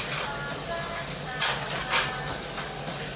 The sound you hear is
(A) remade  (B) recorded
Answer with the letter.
B